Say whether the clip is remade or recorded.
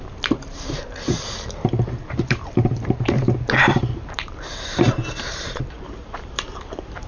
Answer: remade